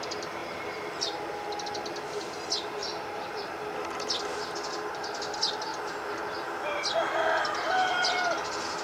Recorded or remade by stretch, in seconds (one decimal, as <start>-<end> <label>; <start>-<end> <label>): 0.0-0.4 recorded; 0.4-1.3 remade; 1.3-2.8 recorded; 2.8-3.6 remade; 3.6-8.8 recorded